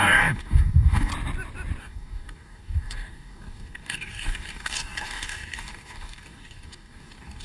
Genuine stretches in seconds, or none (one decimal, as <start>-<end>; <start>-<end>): 1.1-1.8